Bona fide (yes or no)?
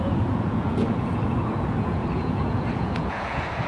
no